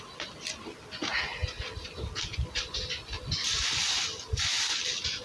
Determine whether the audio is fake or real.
real